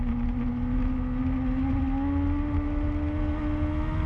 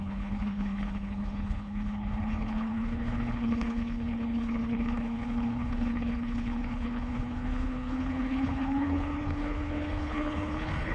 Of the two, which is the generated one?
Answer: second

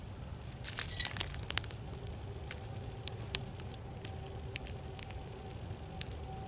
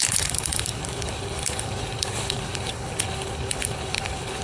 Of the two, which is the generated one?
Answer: second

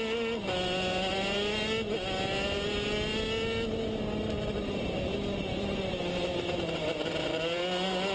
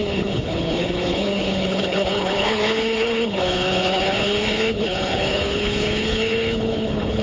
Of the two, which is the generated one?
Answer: second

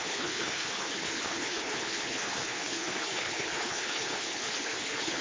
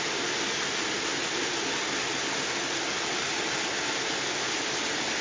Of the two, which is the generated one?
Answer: first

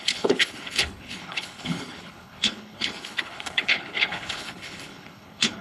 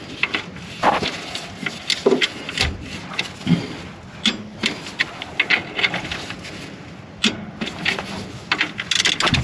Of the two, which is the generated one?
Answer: first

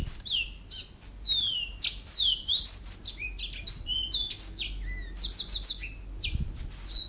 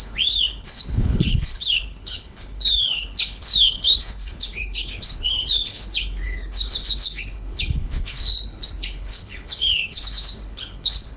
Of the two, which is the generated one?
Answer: second